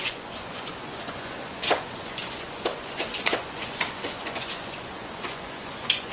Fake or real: fake